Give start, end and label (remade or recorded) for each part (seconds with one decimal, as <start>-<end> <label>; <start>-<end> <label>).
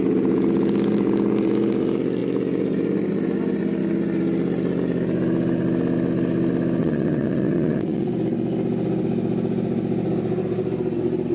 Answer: 0.0-6.8 recorded; 6.8-8.1 remade; 8.1-11.3 recorded